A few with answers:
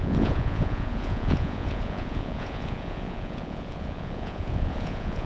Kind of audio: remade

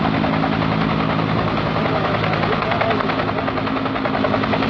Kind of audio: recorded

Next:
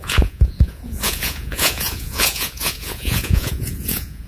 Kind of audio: remade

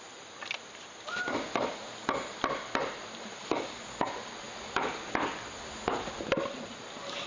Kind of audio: recorded